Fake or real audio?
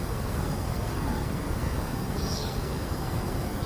fake